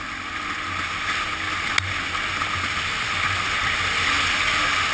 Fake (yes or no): no